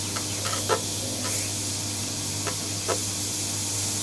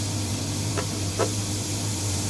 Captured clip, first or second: first